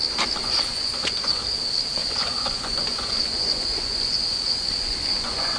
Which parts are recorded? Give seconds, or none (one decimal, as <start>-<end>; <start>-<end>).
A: 0.0-0.4; 1.4-2.0

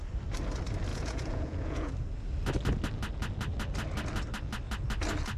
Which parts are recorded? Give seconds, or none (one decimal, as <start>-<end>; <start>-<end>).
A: 0.0-0.9; 1.9-5.4

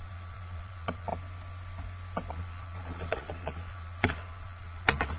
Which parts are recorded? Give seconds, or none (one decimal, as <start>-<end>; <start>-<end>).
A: 1.1-2.3

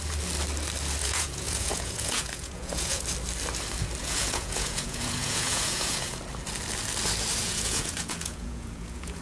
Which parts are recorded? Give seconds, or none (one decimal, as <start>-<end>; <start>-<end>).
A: 0.0-1.0; 3.0-4.0; 6.2-7.4

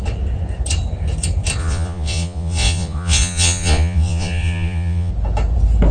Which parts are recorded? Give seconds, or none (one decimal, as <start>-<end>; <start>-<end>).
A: 0.0-1.6; 5.1-5.9

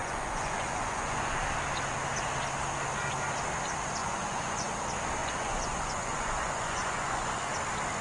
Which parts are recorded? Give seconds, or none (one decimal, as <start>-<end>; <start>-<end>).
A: 1.4-4.0; 4.7-5.2; 7.5-8.0

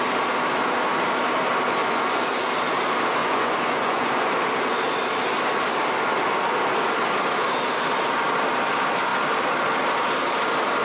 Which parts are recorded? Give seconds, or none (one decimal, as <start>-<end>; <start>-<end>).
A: 0.0-1.8; 2.5-3.2; 4.3-10.8